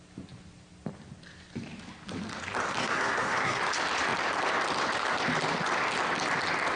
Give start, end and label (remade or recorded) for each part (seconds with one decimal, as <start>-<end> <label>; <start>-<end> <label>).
0.0-2.8 recorded; 2.8-3.6 remade; 3.6-6.8 recorded